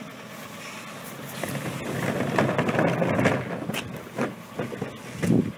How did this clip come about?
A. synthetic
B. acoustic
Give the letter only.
B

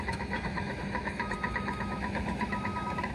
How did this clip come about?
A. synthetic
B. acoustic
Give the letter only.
A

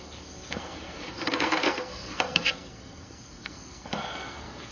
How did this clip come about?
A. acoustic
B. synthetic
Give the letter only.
B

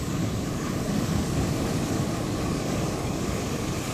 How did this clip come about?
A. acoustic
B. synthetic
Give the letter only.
B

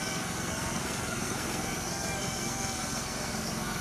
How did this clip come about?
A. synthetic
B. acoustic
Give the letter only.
A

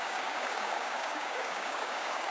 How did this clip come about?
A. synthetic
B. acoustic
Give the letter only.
A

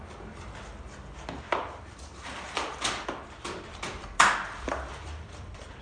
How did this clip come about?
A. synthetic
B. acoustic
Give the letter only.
A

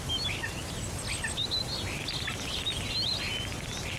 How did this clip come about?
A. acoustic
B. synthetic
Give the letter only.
A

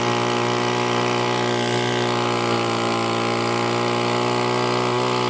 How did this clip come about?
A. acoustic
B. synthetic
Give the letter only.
A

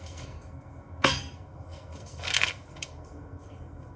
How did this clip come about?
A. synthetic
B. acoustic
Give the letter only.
A